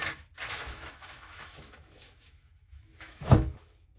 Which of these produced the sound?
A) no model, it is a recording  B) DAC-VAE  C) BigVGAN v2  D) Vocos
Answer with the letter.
B